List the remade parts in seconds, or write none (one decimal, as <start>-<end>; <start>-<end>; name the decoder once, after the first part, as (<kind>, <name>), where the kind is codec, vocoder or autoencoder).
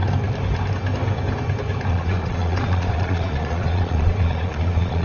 1.9-5.0 (vocoder, Vocos)